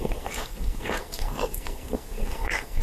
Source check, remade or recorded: remade